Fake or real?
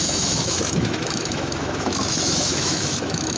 fake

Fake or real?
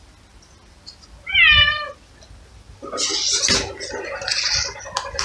real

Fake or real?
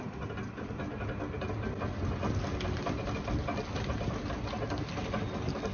real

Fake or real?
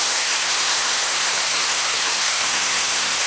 fake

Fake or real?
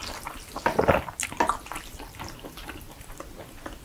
real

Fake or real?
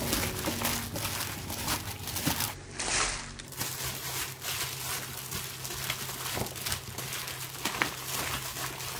real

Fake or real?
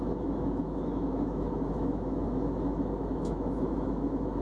fake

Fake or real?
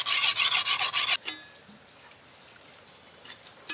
real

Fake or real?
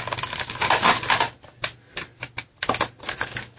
real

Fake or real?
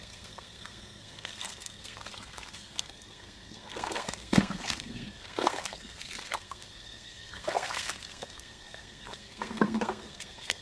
fake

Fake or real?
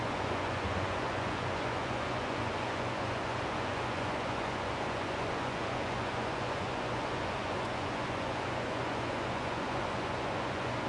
fake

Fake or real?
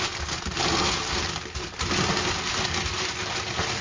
real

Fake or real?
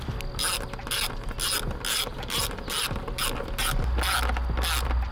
real